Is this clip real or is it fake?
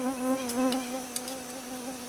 real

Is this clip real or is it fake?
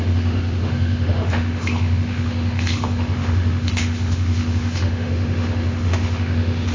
fake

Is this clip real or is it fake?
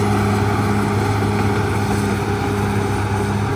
real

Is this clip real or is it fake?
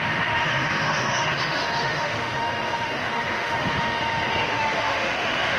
fake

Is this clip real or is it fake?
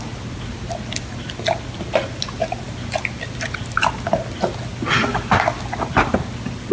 real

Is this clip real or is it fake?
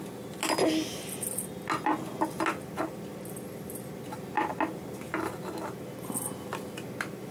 real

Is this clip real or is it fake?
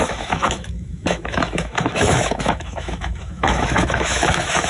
fake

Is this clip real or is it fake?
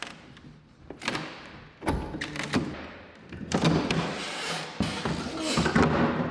real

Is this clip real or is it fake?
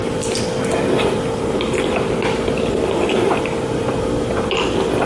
real